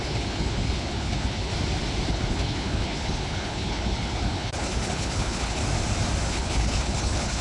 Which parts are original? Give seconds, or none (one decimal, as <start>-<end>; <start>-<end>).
1.5-2.1; 5.6-6.3